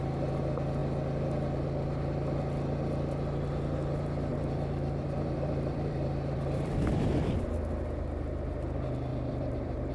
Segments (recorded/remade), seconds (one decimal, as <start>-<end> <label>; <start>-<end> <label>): 0.0-4.3 recorded; 4.3-7.4 remade; 7.4-9.1 recorded; 9.1-9.9 remade